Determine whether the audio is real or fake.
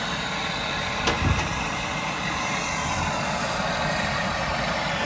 real